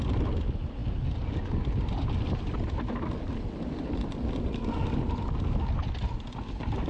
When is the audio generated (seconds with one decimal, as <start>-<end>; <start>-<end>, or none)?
none